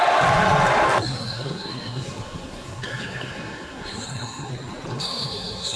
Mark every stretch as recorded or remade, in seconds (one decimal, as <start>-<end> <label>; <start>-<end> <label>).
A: 0.0-1.0 recorded; 1.0-4.5 remade; 4.5-4.9 recorded; 4.9-5.8 remade